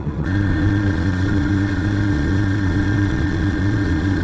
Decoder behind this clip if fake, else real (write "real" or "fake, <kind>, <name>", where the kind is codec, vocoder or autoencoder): fake, vocoder, Vocos